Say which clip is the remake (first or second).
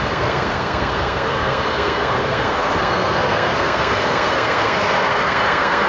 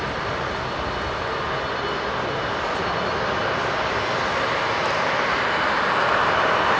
first